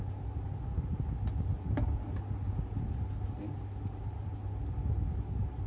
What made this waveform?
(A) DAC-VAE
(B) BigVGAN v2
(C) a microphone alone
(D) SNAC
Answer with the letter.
C